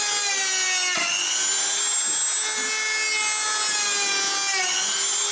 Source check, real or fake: real